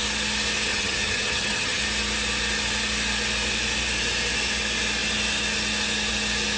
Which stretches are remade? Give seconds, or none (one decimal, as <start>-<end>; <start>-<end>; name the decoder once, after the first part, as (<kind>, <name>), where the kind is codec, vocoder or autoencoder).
0.7-1.8 (vocoder, HiFi-GAN)